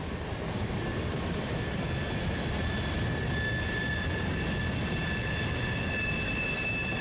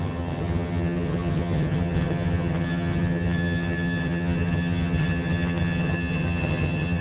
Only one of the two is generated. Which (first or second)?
second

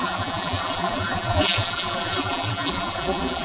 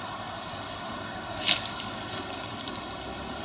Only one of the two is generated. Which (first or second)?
first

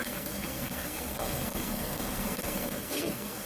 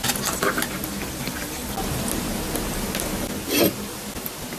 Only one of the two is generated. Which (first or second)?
first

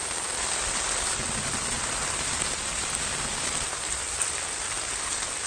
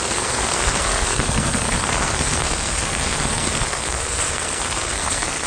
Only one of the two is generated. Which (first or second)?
second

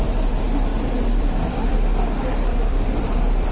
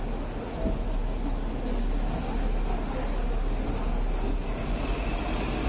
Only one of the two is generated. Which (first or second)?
first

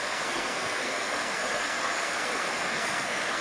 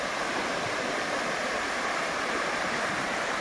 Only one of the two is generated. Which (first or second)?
first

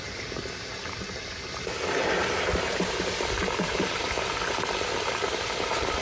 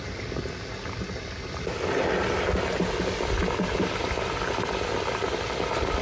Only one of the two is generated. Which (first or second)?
first